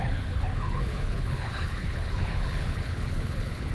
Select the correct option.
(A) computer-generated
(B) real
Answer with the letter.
A